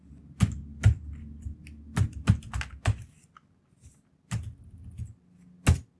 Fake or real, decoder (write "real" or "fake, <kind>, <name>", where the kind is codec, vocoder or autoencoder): real